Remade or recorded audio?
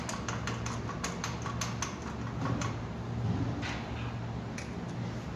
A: recorded